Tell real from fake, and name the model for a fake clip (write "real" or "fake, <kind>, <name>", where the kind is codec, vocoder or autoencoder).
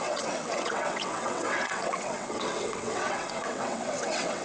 fake, vocoder, WaveNeXt